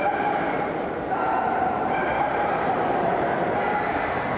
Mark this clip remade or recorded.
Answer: remade